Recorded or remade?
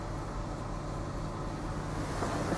recorded